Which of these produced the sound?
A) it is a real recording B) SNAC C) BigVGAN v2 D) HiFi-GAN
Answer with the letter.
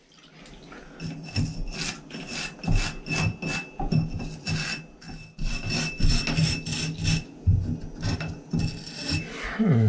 A